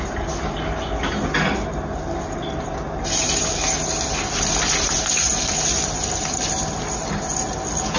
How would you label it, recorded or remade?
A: recorded